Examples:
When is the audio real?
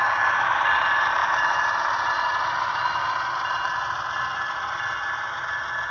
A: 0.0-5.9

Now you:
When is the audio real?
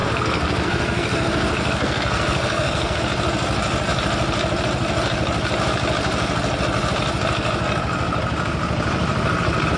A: 3.0-9.8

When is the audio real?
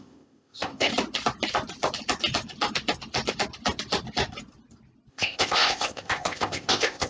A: 0.9-5.1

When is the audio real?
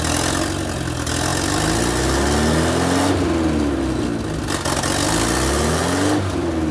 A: 0.0-6.7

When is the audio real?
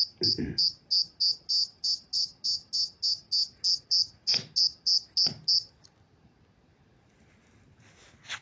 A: 0.0-8.4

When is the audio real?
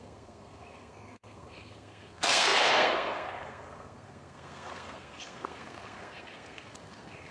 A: none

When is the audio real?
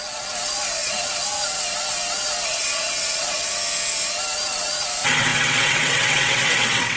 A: 3.6-4.4